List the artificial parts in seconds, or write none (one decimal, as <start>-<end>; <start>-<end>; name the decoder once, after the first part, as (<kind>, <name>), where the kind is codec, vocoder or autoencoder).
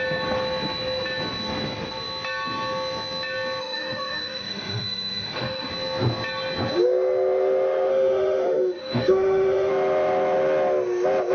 3.6-5.7 (autoencoder, DAC-VAE); 7.9-9.7